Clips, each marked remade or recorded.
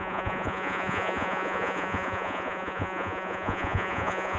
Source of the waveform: remade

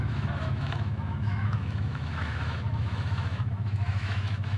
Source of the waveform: remade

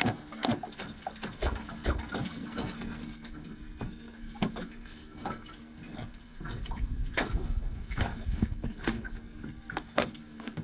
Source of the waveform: remade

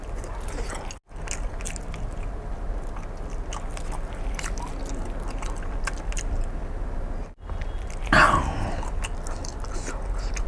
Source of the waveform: recorded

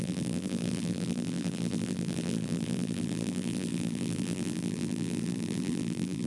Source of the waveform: remade